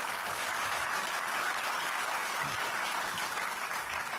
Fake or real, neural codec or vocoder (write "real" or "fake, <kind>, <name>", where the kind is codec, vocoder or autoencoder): fake, codec, DAC